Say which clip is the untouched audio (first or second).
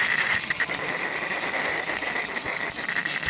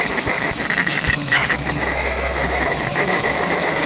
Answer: first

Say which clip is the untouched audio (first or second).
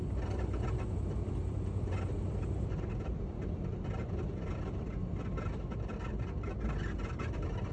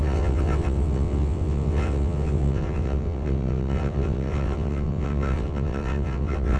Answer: first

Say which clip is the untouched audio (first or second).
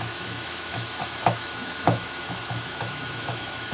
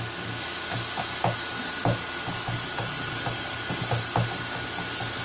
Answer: second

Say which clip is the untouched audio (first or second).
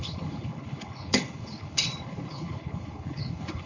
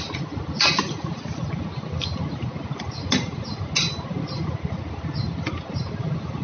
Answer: second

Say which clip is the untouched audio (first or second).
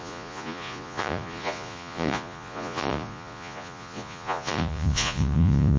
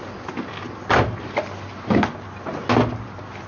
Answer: second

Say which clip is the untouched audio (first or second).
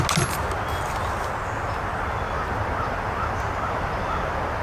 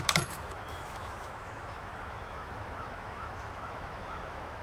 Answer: first